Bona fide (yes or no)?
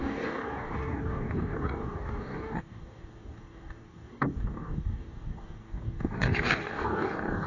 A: no